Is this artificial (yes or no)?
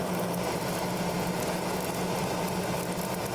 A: no